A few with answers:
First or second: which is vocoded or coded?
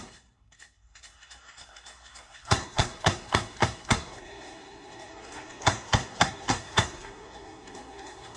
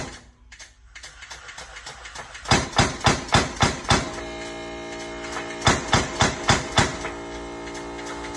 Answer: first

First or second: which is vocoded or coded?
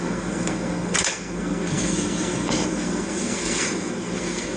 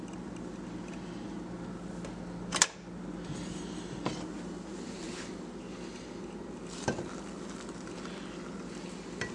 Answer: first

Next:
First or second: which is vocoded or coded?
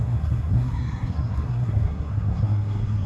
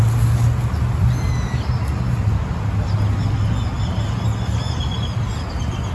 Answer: first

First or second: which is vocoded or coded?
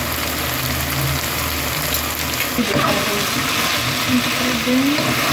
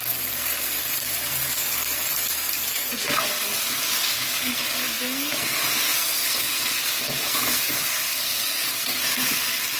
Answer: second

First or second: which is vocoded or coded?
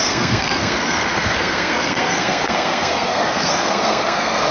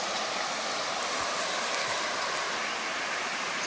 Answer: first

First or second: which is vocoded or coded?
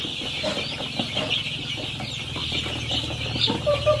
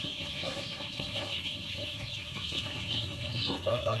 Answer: second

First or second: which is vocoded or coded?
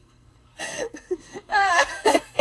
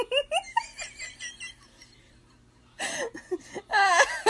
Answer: first